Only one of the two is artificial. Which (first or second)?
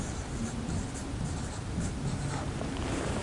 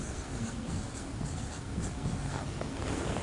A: second